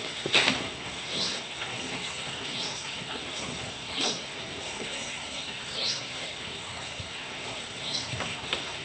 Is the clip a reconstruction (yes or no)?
yes